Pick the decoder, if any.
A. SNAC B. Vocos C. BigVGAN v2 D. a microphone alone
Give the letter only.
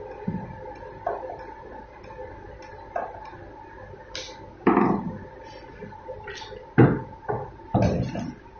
D